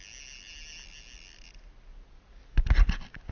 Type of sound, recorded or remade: recorded